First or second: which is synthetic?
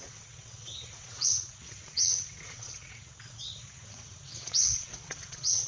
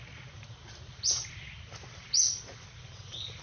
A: first